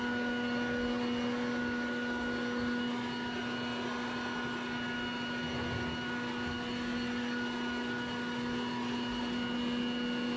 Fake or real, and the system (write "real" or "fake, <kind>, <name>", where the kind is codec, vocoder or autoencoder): real